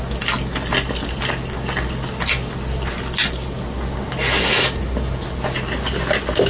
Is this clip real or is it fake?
real